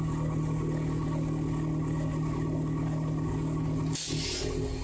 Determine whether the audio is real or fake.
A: real